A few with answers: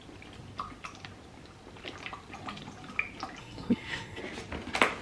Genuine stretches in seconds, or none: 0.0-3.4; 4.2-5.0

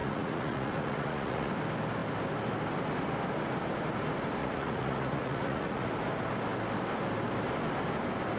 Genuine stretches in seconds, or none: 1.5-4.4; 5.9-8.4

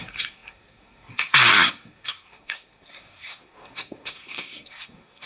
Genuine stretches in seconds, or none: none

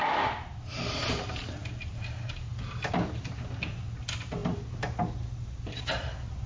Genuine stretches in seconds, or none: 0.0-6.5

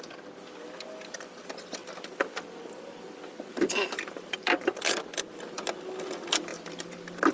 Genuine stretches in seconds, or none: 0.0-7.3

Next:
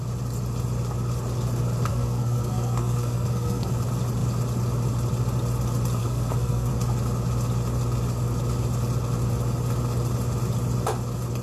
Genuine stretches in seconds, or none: 0.0-1.9; 3.7-6.0; 6.7-11.4